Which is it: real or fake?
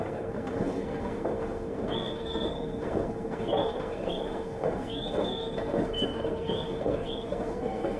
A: fake